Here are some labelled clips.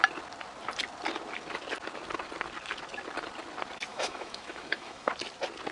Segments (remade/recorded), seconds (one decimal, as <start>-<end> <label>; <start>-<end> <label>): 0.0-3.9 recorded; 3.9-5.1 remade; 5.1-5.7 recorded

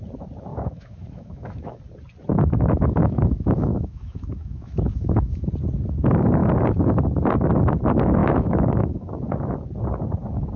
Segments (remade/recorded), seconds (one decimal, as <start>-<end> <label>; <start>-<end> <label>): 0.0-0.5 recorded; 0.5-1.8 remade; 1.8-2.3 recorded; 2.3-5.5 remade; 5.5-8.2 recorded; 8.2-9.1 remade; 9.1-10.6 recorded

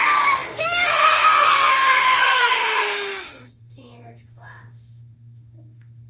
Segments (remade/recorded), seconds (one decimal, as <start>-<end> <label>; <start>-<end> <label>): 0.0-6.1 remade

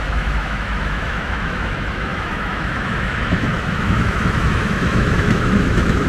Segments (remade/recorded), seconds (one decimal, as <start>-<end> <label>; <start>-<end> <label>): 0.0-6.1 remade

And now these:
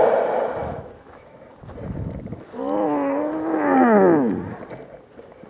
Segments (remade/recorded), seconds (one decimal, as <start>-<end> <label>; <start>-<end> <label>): 0.0-0.6 recorded; 0.6-1.4 remade; 1.4-5.5 recorded